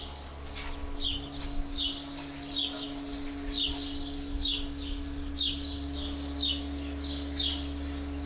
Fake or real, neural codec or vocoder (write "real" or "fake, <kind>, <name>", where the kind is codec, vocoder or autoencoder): real